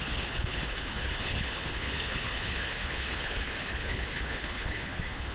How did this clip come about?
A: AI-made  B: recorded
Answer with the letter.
A